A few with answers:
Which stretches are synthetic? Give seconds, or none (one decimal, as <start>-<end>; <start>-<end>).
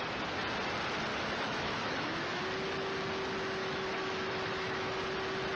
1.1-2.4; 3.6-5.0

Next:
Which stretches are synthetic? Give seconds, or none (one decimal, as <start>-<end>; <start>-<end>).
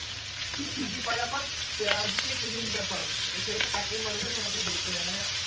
0.0-3.0; 4.2-5.5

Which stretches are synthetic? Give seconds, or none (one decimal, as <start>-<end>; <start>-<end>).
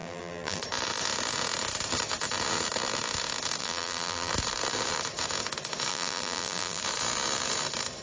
0.0-0.6; 3.6-4.3; 5.9-6.8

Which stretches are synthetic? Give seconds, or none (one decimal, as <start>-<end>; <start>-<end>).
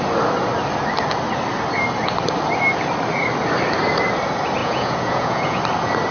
4.6-5.6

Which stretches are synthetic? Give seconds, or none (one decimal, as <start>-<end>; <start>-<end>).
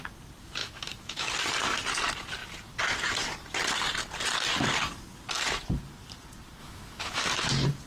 0.6-1.3; 6.6-7.3